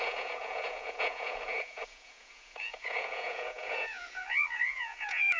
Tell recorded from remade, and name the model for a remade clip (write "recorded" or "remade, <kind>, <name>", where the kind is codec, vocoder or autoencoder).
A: remade, vocoder, Vocos